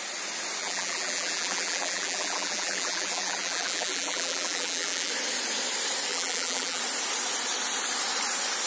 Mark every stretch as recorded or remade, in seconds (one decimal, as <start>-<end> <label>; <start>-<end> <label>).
0.0-0.6 recorded; 0.6-5.1 remade; 5.1-6.1 recorded; 6.1-6.8 remade; 6.8-8.7 recorded

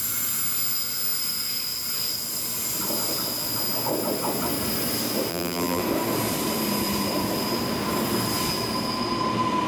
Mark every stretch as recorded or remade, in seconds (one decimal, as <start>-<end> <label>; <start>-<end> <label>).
0.0-5.3 recorded; 5.3-5.8 remade; 5.8-9.7 recorded

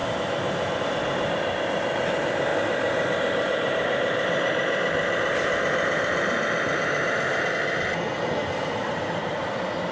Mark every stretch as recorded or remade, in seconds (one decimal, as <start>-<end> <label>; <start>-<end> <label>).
0.0-2.5 recorded; 2.5-7.5 remade; 7.5-8.8 recorded; 8.8-9.4 remade; 9.4-9.9 recorded